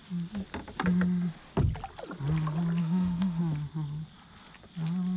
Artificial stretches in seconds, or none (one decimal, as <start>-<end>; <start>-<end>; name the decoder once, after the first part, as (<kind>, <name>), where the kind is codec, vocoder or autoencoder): 2.8-3.4 (autoencoder, DAC-VAE)